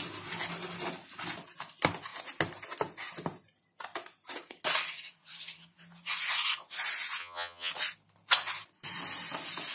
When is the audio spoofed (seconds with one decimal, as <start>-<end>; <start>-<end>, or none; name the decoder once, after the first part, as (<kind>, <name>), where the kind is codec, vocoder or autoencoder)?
7.2-7.7 (vocoder, HiFi-GAN)